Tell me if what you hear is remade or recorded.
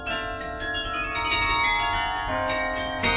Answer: recorded